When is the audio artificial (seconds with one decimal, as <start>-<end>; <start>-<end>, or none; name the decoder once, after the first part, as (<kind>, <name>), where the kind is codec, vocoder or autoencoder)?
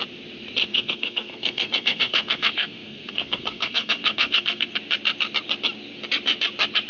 0.6-4.7 (codec, SNAC)